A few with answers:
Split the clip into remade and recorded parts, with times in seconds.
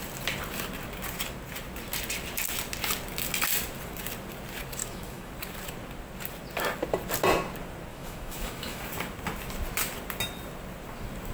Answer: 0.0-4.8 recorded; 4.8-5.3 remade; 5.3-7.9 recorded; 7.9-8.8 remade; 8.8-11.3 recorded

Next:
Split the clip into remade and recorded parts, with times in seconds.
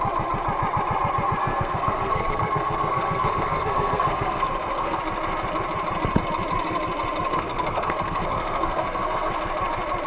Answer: 0.0-1.4 recorded; 1.4-5.0 remade; 5.0-7.3 recorded; 7.3-9.3 remade; 9.3-10.1 recorded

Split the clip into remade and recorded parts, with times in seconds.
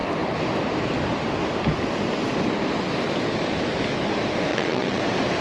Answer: 0.0-4.5 recorded; 4.5-5.0 remade; 5.0-5.4 recorded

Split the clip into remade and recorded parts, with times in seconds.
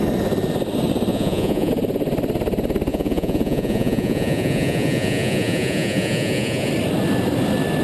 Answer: 0.0-1.1 recorded; 1.1-1.7 remade; 1.7-2.9 recorded; 2.9-6.7 remade; 6.7-7.8 recorded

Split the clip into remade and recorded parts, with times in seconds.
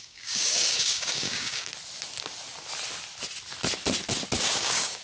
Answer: 0.0-1.7 remade; 1.7-4.4 recorded; 4.4-5.0 remade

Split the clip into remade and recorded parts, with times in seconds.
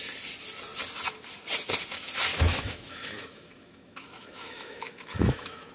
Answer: 0.0-2.3 recorded; 2.3-5.7 remade